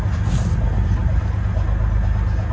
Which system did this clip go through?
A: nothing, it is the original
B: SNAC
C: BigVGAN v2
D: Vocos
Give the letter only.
A